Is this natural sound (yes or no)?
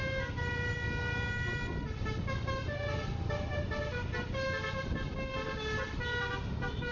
yes